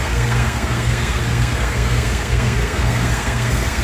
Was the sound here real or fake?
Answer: fake